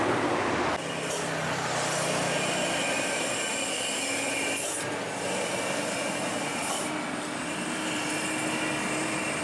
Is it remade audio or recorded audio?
recorded